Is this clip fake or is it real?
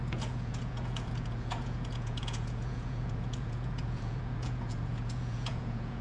fake